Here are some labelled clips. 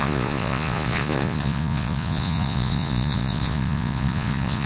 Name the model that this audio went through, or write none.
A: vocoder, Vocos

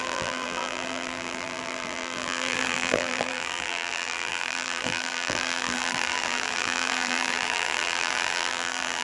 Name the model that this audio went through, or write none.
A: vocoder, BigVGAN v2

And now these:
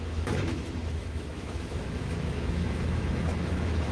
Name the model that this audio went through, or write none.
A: autoencoder, DAC-VAE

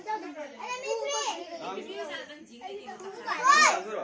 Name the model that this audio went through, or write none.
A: none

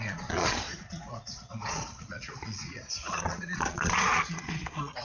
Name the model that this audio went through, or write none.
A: vocoder, Vocos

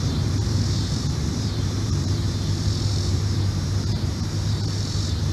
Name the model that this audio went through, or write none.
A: vocoder, BigVGAN v2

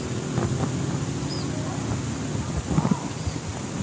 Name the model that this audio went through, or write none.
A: none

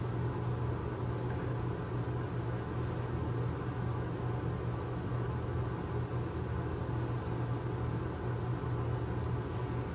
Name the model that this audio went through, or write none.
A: none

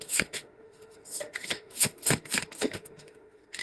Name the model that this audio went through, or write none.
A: autoencoder, DAC-VAE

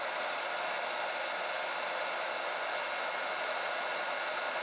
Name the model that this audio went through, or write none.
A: none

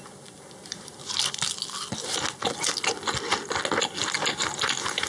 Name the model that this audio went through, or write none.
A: none